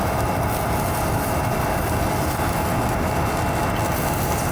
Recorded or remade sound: recorded